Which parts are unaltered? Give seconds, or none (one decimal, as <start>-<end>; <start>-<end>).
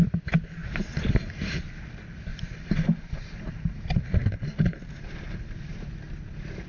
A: 0.0-0.6; 1.7-2.3; 5.9-6.7